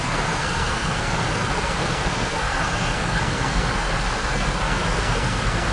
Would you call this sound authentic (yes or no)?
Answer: no